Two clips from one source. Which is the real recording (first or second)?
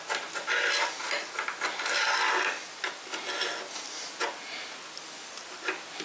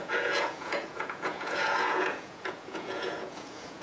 first